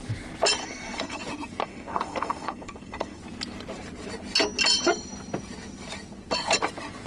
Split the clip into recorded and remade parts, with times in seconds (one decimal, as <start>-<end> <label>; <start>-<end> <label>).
0.0-0.6 recorded; 0.6-1.2 remade; 1.2-1.6 recorded; 1.6-3.2 remade; 3.2-7.1 recorded